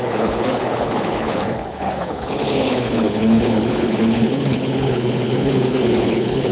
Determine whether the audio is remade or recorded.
remade